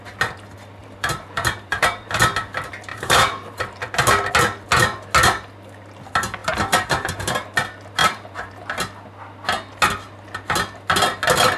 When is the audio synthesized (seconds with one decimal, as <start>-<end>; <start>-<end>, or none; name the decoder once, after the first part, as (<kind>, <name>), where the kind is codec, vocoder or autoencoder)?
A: 0.8-2.2 (vocoder, BigVGAN v2); 2.9-4.3; 6.4-7.2; 8.0-8.5